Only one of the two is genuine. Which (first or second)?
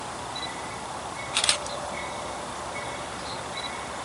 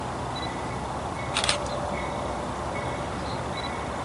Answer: second